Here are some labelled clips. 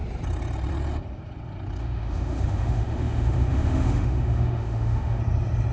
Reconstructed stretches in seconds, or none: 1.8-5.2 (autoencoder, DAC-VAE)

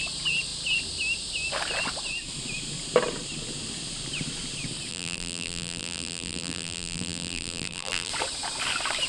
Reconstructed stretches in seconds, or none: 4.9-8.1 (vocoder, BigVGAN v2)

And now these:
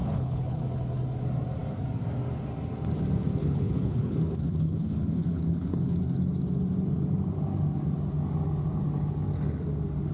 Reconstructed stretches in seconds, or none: 0.0-0.6 (codec, HILCodec); 3.4-6.0

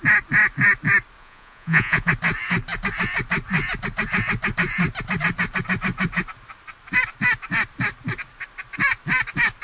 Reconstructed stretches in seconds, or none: 1.2-2.1 (vocoder, Vocos)

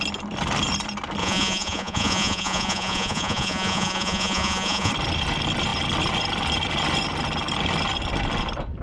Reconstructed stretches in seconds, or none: 1.2-4.9 (vocoder, Vocos)